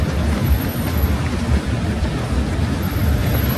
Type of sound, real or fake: real